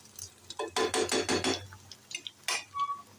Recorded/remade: recorded